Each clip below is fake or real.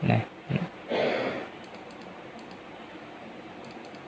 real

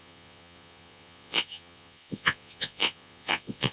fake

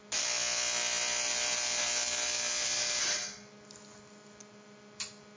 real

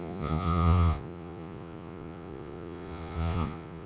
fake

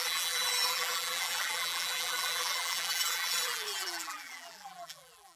fake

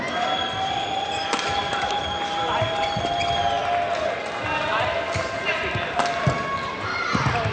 real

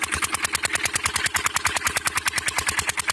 real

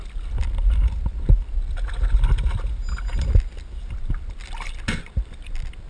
real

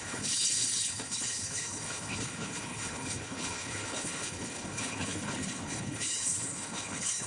fake